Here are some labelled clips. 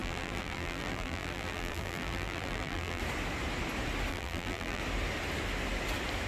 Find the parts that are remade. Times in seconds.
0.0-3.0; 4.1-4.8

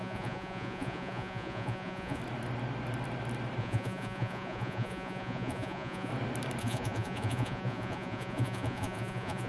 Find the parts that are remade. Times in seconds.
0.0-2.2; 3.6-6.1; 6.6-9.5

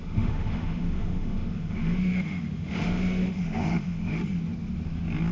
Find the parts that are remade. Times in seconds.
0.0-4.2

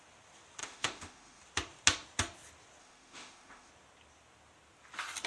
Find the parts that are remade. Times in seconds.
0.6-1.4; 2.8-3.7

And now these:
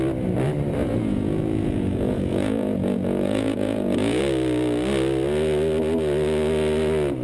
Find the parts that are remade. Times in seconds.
0.8-4.2

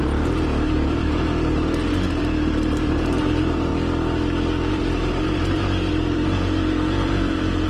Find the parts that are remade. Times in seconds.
0.0-3.7; 4.7-7.7